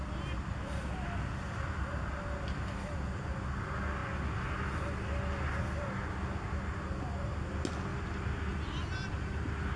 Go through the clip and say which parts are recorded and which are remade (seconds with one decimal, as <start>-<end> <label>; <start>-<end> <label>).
0.0-9.8 recorded